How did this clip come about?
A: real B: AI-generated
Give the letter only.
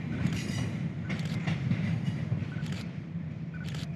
B